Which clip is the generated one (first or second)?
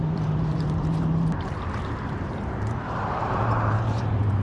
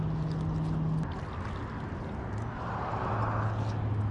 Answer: first